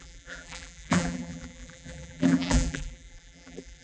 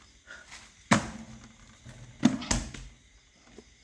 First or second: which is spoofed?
first